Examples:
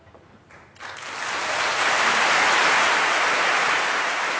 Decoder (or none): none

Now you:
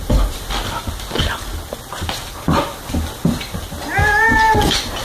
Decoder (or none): none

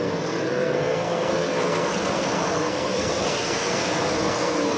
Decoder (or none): codec, SNAC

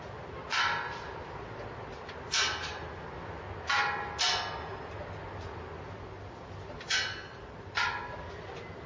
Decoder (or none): none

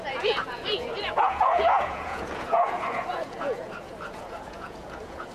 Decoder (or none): vocoder, Vocos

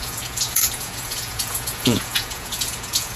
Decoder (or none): vocoder, Vocos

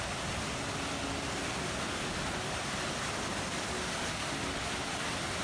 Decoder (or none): none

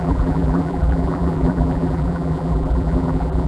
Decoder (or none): vocoder, BigVGAN v2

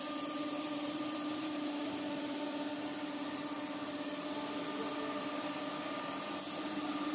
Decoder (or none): vocoder, BigVGAN v2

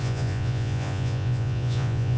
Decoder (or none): vocoder, Vocos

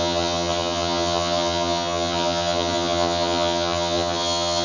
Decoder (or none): vocoder, HiFi-GAN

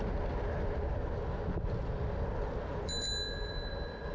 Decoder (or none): none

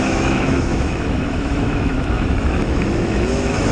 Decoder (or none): autoencoder, DAC-VAE